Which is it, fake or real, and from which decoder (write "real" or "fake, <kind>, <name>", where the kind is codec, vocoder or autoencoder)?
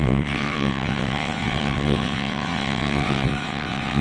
fake, vocoder, WaveNeXt